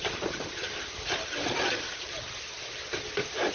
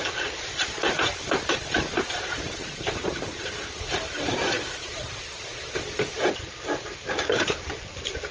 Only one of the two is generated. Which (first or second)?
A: second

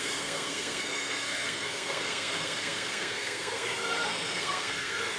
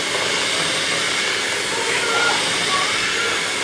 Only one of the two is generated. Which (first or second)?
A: first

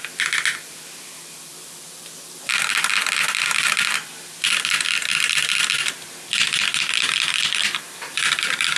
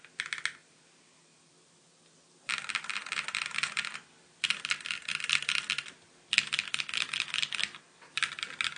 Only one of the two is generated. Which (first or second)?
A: first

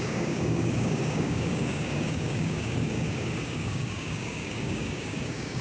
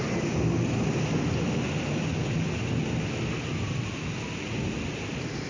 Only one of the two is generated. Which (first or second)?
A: first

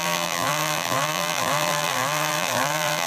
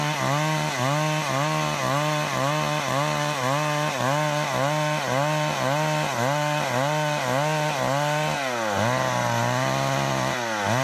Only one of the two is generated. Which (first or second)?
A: first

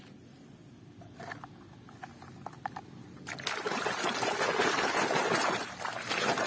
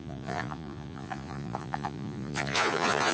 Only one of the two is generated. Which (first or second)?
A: second